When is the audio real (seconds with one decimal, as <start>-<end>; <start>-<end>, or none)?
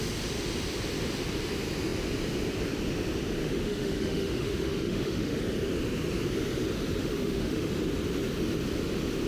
0.0-3.4; 5.4-7.0; 7.7-9.3